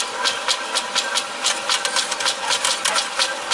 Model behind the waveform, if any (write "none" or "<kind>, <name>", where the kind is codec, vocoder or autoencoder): none